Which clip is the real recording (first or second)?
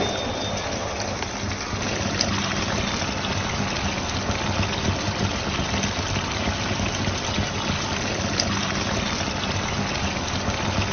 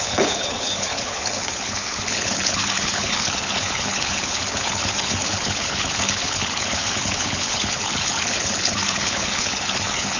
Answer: first